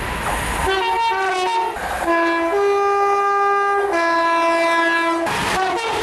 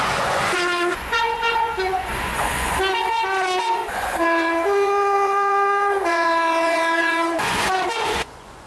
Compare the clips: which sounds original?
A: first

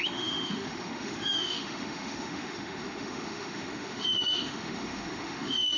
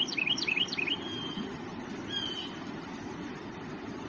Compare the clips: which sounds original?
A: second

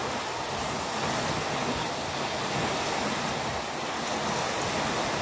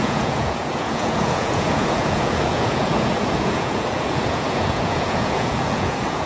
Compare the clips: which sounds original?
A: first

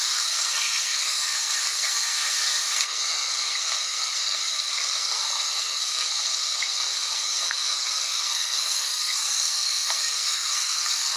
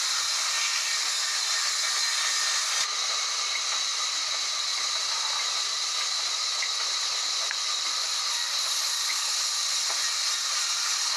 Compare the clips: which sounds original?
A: second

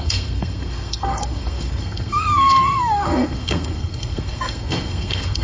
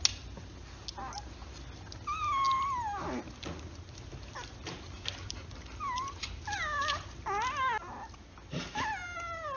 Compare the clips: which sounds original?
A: second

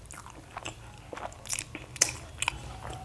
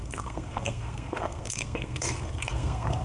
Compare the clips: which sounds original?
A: first